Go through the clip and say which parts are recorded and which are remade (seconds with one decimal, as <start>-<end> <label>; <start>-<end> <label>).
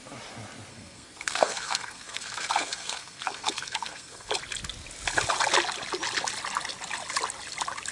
0.0-0.7 recorded; 0.7-4.3 remade; 4.3-7.9 recorded